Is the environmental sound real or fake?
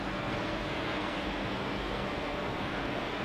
fake